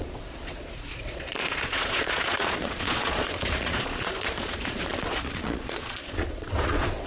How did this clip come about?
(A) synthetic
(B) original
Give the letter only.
A